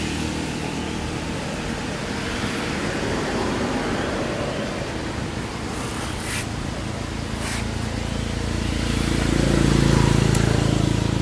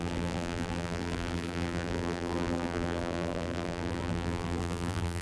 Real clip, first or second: first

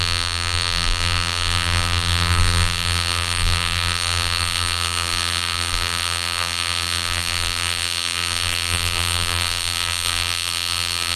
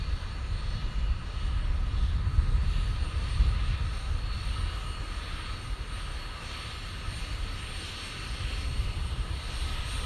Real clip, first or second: second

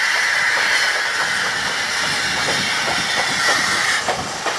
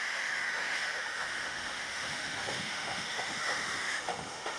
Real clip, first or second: first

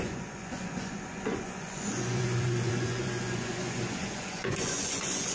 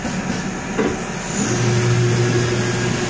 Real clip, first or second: second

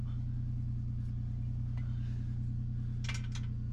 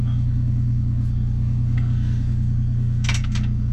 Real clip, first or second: first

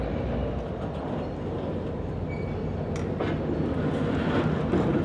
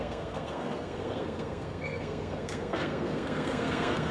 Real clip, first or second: first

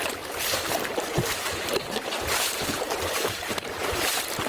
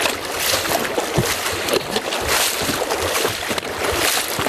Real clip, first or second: second